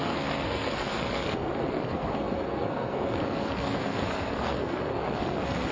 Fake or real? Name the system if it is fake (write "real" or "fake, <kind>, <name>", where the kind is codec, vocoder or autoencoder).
fake, codec, SNAC